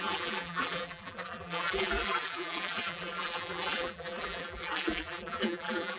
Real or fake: fake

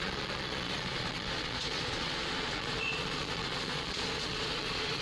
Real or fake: fake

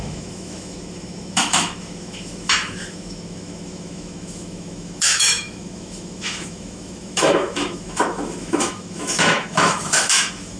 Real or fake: fake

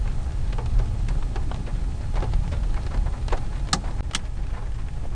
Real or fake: real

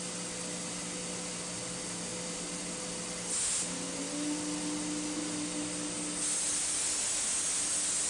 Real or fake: real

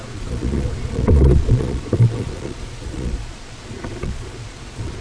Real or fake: fake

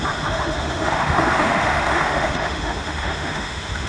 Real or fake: fake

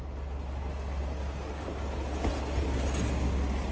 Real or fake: real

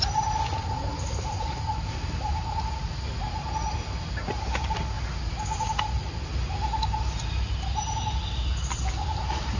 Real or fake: real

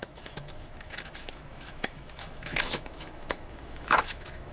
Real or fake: fake